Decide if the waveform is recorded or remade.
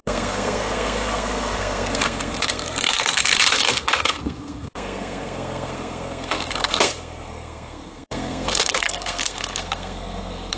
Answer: remade